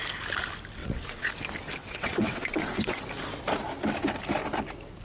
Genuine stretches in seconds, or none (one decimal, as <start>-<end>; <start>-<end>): 0.0-0.8; 1.3-1.8; 3.0-5.0